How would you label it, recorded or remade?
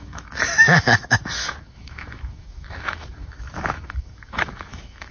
remade